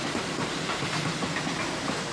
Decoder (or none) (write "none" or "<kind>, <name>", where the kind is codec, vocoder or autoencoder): none